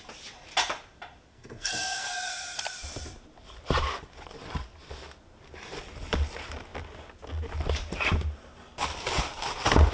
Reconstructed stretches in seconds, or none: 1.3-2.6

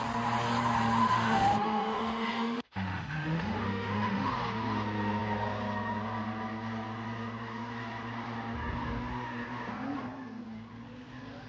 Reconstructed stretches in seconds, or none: 1.0-4.3

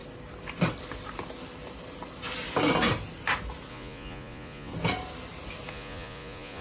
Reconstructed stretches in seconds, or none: 3.7-4.7; 5.7-6.6

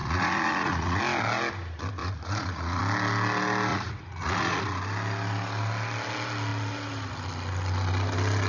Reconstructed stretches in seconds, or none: 0.0-1.0; 2.0-2.8; 3.7-4.6

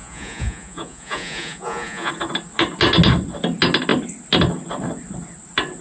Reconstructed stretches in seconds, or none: 0.0-2.1